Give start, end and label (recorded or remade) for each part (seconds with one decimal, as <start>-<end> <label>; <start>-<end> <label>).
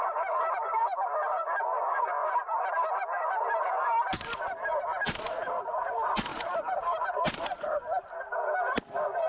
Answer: 0.0-6.3 recorded; 6.3-7.0 remade; 7.0-9.3 recorded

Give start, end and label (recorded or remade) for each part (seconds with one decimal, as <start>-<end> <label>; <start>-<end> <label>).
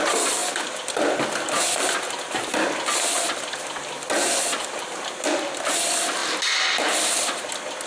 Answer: 0.0-7.9 recorded